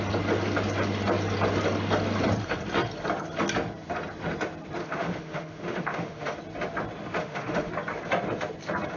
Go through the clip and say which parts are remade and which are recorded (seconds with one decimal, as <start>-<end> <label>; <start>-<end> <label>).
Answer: 0.0-4.8 recorded; 4.8-6.4 remade; 6.4-7.2 recorded; 7.2-7.7 remade; 7.7-9.0 recorded